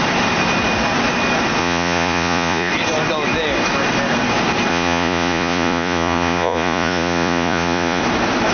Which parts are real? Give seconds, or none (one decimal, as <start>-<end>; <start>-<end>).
0.0-1.6; 2.7-4.7; 8.0-8.5